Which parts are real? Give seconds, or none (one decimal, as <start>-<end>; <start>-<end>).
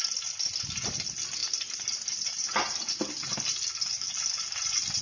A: 0.0-5.0